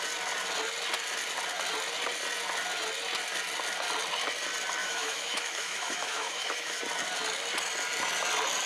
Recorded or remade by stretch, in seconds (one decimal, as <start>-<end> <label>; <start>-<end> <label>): 0.0-4.8 recorded; 4.8-6.8 remade; 6.8-8.7 recorded